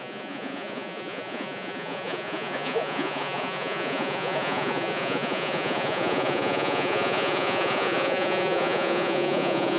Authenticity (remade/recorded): remade